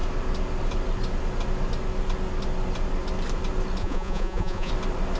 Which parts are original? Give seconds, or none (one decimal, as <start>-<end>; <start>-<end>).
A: 0.0-3.8; 4.7-5.2